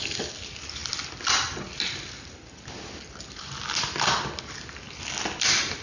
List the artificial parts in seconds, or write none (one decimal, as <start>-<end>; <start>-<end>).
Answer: none